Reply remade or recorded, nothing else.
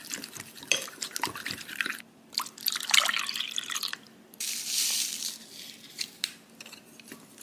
recorded